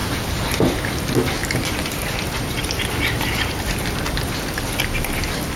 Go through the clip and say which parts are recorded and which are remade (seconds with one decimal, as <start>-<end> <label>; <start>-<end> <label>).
0.0-0.8 remade; 0.8-1.4 recorded; 1.4-4.8 remade; 4.8-5.6 recorded